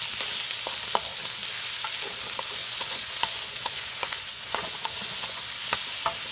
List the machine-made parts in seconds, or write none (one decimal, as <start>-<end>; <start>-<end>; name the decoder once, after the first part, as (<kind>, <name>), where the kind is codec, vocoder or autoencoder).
2.6-5.4 (vocoder, Vocos)